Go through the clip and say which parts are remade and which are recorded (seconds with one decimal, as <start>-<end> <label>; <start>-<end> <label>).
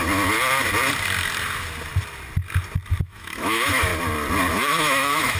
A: 0.0-3.0 recorded; 3.0-3.9 remade; 3.9-4.5 recorded; 4.5-5.4 remade